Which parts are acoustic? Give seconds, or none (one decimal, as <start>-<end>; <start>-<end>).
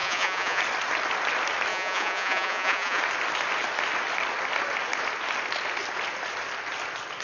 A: 0.6-1.7; 3.0-7.2